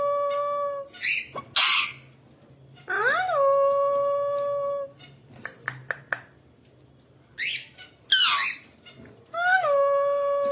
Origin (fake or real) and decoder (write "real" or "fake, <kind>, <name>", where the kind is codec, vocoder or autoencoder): real